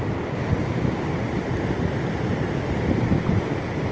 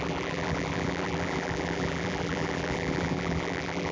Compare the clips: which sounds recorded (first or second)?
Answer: first